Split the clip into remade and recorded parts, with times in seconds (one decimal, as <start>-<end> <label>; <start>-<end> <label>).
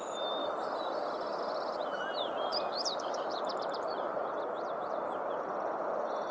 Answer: 0.0-2.5 recorded; 2.5-4.3 remade; 4.3-6.3 recorded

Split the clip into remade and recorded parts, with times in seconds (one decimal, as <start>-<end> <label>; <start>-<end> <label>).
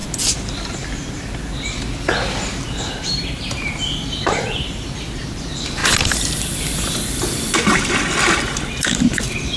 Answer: 0.0-2.5 recorded; 2.5-5.8 remade; 5.8-8.4 recorded; 8.4-9.6 remade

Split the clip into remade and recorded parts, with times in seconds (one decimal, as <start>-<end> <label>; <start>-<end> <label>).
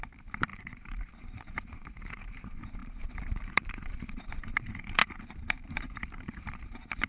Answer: 0.0-7.1 remade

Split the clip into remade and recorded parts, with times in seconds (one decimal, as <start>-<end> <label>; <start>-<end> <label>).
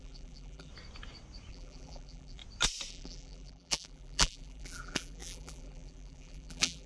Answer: 0.0-0.7 remade; 0.7-1.5 recorded; 1.5-2.4 remade; 2.4-2.9 recorded; 2.9-6.9 remade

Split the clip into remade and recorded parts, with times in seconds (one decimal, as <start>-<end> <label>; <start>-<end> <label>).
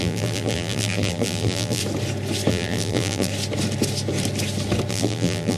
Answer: 0.0-1.8 remade; 1.8-2.5 recorded; 2.5-3.3 remade; 3.3-4.9 recorded; 4.9-5.6 remade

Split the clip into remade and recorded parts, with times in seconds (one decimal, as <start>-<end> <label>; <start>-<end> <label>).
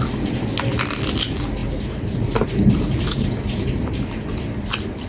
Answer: 0.0-1.6 recorded; 1.6-3.9 remade; 3.9-5.1 recorded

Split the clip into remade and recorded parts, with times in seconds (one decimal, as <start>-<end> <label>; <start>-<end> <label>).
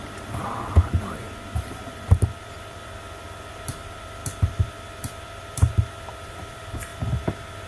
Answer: 0.0-4.2 remade; 4.2-4.7 recorded; 4.7-6.9 remade; 6.9-7.7 recorded